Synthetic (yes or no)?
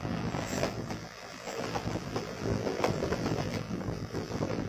yes